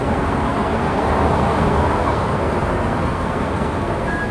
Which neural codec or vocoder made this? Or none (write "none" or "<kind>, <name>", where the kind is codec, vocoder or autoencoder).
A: codec, SNAC